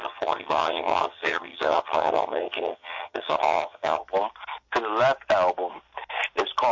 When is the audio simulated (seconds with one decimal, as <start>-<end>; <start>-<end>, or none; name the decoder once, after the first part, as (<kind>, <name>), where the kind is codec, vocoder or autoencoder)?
0.0-4.0 (vocoder, HiFi-GAN)